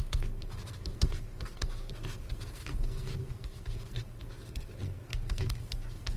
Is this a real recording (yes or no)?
no